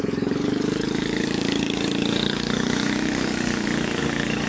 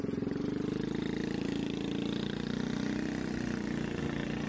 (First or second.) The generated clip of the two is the first